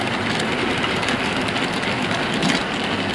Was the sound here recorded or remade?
recorded